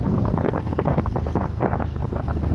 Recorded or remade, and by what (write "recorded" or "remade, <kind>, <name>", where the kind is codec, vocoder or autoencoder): remade, codec, SNAC